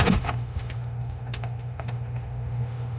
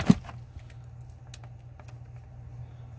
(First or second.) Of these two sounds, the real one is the second